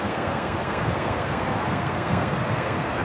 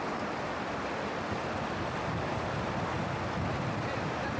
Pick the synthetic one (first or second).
first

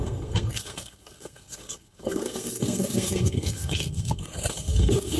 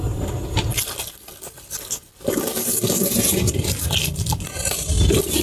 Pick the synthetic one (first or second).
first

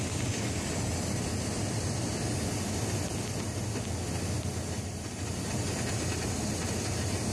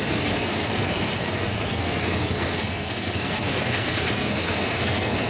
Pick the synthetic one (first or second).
second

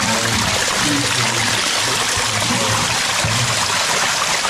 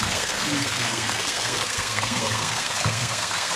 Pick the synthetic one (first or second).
second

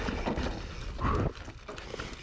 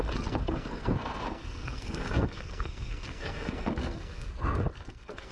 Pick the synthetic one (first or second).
second